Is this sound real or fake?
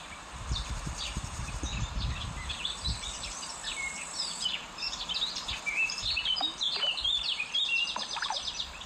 fake